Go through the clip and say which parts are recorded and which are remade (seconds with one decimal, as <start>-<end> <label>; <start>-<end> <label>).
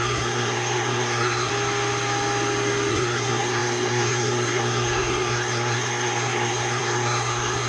0.0-1.5 remade; 1.5-2.9 recorded; 2.9-7.7 remade